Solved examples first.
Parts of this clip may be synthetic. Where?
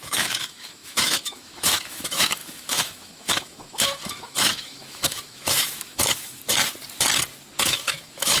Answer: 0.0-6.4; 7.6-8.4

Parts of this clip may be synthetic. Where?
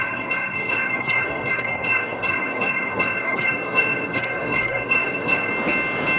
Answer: 0.0-5.5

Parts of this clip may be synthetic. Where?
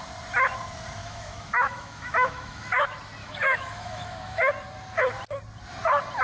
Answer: 1.0-2.6; 3.2-4.5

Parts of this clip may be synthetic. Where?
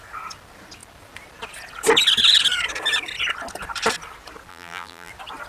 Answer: 4.5-5.1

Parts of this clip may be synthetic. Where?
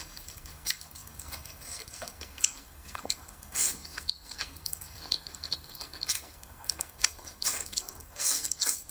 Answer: 0.0-8.9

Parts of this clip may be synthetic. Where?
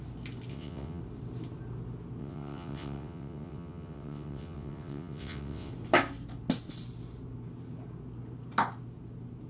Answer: 0.5-1.0; 2.2-5.7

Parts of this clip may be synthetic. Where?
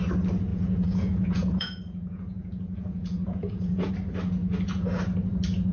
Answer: 0.5-3.9